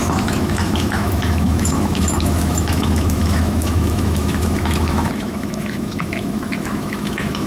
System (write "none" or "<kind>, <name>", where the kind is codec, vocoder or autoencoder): autoencoder, DAC-VAE